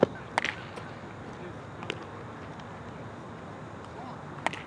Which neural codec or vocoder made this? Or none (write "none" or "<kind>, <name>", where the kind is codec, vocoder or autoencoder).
none